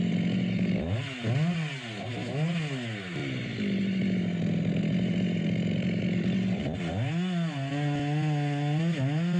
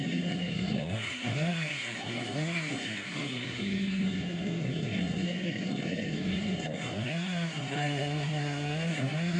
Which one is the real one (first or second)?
first